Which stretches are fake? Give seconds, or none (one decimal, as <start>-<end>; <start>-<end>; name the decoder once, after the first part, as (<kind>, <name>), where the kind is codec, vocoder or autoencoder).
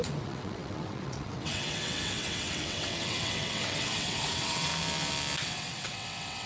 0.0-4.7 (vocoder, WaveNeXt); 5.4-6.5